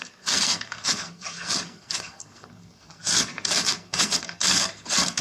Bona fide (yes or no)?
no